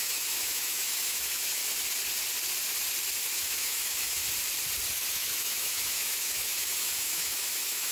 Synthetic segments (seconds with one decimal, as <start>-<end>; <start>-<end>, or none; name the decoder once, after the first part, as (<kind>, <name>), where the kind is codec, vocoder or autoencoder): 0.0-1.6 (autoencoder, DAC-VAE); 3.3-4.2; 5.1-7.9